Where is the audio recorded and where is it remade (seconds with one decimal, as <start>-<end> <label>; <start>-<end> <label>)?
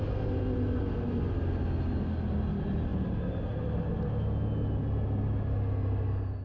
0.0-6.4 recorded